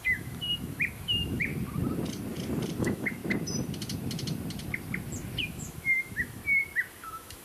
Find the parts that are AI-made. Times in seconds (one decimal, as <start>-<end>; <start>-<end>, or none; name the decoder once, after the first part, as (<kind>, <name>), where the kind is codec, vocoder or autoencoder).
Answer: 0.0-1.5 (autoencoder, DAC-VAE); 2.8-3.2; 5.4-6.4; 6.9-7.4